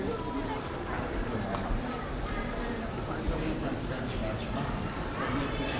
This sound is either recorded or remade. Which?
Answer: remade